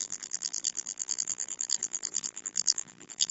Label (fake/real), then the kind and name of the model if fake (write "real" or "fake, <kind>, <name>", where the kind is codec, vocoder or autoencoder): fake, vocoder, BigVGAN v2